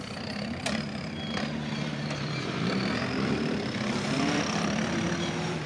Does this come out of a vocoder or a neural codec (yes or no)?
yes